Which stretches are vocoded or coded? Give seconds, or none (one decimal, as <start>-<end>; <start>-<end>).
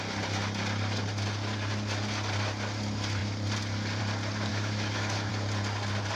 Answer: 4.5-5.3